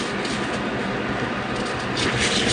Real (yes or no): yes